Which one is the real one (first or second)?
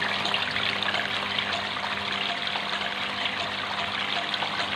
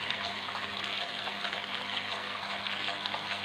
first